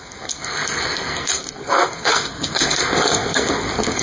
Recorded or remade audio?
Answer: remade